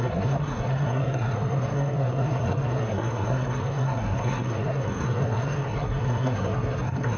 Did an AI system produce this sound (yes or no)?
yes